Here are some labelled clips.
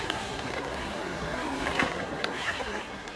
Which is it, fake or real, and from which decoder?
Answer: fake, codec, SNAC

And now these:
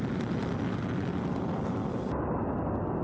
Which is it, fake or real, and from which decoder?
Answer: real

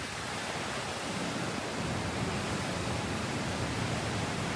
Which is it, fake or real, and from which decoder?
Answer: real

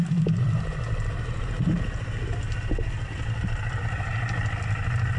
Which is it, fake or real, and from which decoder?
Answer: real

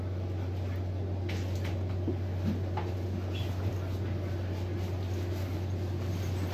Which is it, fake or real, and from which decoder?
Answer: real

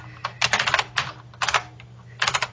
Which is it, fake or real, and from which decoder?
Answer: real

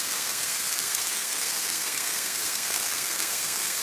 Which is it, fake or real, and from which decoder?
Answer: fake, codec, SNAC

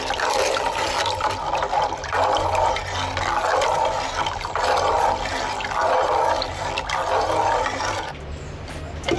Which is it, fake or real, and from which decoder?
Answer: real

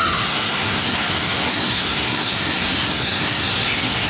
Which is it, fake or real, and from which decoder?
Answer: fake, codec, SNAC